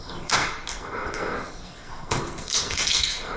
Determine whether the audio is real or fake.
fake